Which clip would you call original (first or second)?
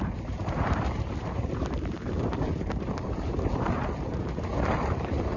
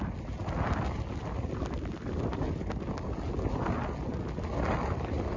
second